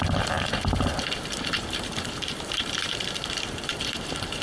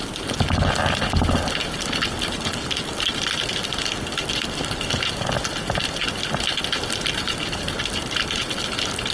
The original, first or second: second